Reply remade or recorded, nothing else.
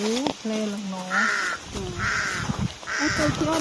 recorded